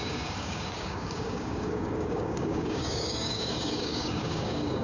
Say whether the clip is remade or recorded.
remade